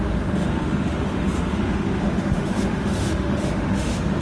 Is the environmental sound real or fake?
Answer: fake